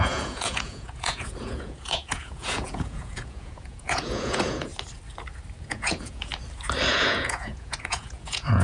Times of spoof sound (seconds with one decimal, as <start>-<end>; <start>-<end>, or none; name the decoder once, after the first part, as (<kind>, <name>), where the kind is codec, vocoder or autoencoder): 0.0-4.7 (vocoder, Vocos); 5.6-6.3; 6.9-8.6